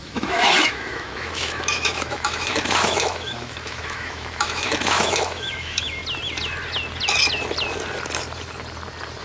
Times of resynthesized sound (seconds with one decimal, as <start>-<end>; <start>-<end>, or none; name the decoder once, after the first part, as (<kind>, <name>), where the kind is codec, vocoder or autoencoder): 0.0-6.0 (autoencoder, DAC-VAE)